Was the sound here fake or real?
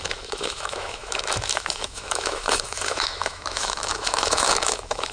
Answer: fake